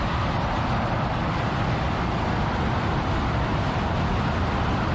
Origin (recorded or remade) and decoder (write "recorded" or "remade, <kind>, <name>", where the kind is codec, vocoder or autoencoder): remade, vocoder, BigVGAN v2